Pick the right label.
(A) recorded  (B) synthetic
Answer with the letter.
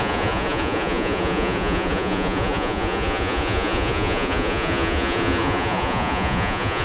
B